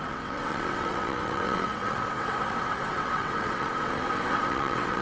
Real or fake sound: fake